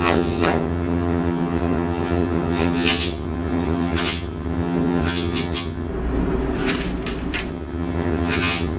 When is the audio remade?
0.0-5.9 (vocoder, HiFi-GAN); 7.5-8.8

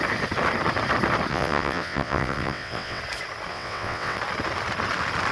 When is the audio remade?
1.3-3.0 (vocoder, WaveNeXt); 3.5-4.2